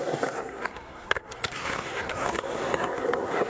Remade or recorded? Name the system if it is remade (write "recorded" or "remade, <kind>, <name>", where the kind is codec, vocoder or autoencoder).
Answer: remade, codec, SNAC